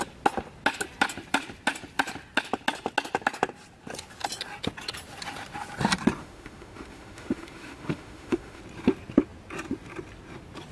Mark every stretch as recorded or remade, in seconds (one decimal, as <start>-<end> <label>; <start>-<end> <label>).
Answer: 0.0-6.2 recorded; 6.2-8.6 remade; 8.6-10.7 recorded